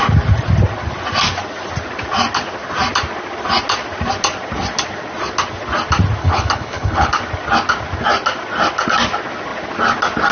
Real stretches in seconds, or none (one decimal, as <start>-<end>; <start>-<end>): 0.0-6.2; 7.1-10.3